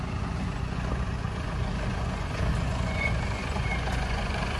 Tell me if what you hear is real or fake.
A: fake